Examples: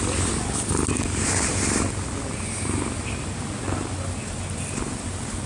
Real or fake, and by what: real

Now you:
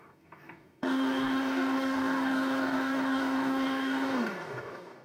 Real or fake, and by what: fake, codec, DAC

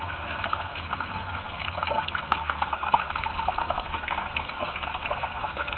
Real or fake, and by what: fake, codec, SNAC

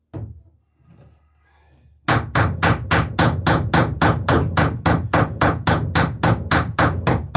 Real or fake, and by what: real